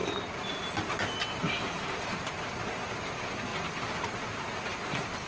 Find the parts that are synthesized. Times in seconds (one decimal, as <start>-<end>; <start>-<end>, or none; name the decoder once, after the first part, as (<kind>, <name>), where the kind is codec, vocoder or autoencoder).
none